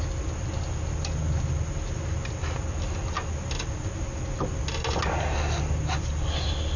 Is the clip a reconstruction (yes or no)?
no